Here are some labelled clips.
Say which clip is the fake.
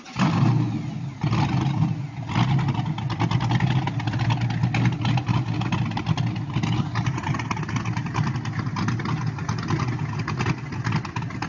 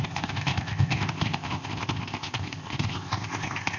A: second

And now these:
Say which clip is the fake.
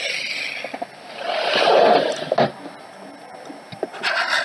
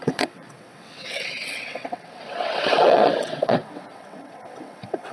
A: second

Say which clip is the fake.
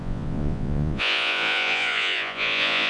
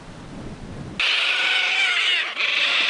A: first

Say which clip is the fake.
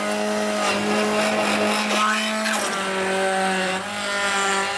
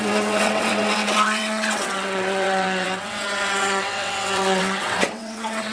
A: second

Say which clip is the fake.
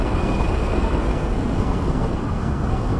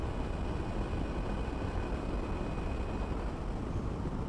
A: first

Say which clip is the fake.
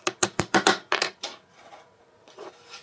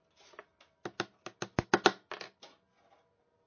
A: first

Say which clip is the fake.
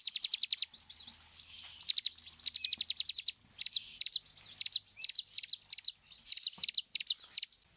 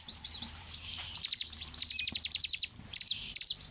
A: second